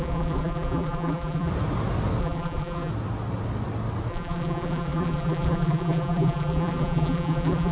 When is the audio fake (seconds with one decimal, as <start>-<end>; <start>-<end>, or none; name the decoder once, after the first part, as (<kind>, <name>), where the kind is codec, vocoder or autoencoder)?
0.0-1.5 (vocoder, BigVGAN v2); 2.2-2.9; 4.1-7.7

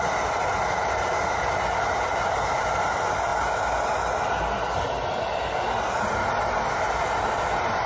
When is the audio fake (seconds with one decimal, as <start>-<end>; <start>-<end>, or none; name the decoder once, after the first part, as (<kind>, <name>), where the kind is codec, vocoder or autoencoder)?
none

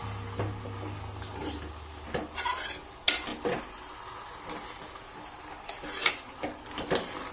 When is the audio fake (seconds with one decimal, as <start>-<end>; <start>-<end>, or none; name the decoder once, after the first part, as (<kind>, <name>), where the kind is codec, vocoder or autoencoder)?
none

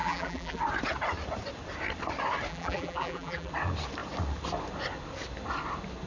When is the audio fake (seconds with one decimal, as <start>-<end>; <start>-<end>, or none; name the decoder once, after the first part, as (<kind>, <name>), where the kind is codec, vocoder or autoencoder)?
0.0-0.6 (vocoder, BigVGAN v2); 2.5-3.5

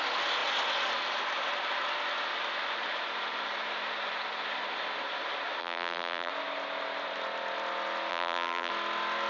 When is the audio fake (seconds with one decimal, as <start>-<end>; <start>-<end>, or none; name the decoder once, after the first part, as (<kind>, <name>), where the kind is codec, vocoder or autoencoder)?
5.6-6.3 (vocoder, BigVGAN v2); 8.1-8.7